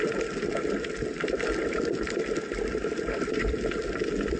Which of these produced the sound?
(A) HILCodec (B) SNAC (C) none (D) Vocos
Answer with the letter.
C